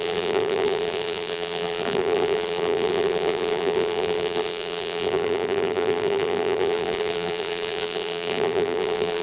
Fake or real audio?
fake